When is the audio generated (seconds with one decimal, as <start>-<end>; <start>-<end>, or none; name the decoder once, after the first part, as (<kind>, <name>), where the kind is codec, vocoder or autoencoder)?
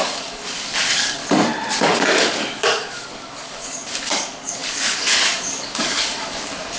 0.0-1.2 (codec, DAC); 1.8-6.8